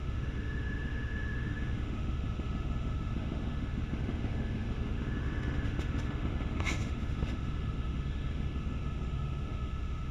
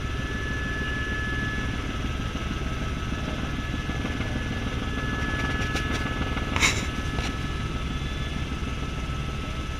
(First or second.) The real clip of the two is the second